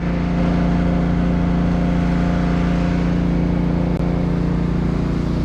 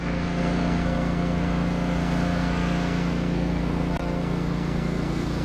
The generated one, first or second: second